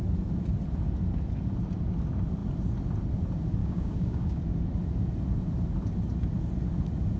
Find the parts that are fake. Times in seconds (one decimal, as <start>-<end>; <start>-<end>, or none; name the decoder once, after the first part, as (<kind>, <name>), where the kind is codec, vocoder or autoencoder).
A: 3.6-4.4 (codec, DAC)